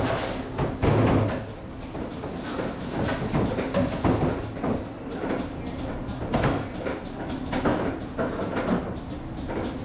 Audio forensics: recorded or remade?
recorded